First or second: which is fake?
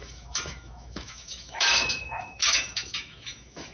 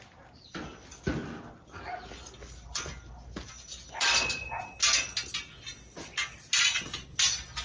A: first